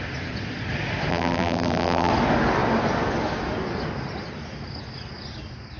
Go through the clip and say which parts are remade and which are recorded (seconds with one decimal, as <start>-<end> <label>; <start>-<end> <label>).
0.0-1.1 recorded; 1.1-2.1 remade; 2.1-5.8 recorded